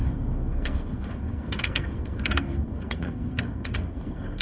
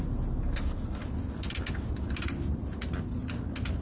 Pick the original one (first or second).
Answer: second